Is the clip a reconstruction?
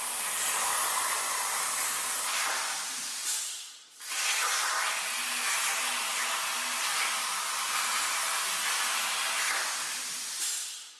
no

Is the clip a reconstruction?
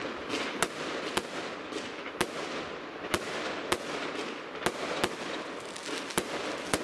no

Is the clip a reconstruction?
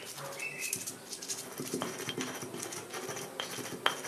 no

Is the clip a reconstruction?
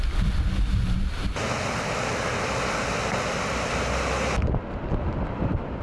no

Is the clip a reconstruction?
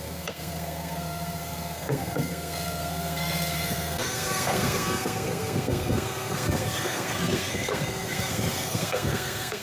yes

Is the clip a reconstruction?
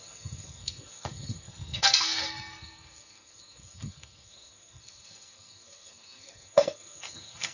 yes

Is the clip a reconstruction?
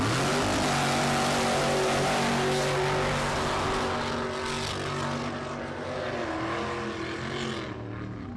no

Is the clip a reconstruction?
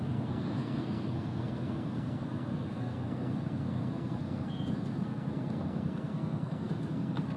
yes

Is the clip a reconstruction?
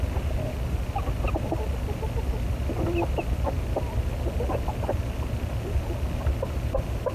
no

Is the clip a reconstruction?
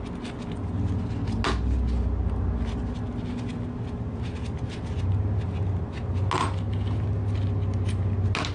no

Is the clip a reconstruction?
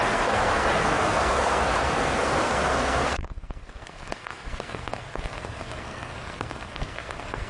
yes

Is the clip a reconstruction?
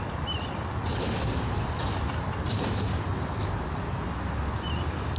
no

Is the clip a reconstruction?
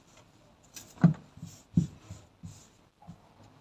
no